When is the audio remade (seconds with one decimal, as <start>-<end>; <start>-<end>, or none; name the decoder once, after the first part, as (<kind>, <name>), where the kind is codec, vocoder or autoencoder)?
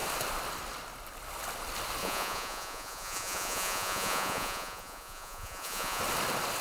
2.0-6.0 (vocoder, Vocos)